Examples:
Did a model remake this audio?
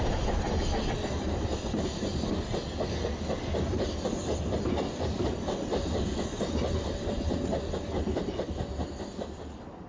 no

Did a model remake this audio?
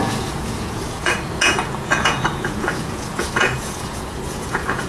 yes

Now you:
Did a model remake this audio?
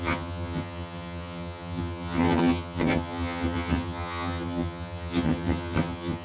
yes